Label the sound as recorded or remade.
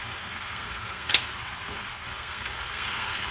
remade